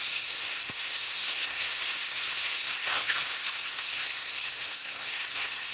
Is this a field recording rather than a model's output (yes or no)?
no